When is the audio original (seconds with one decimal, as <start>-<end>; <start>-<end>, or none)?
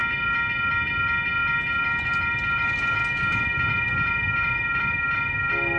0.0-5.8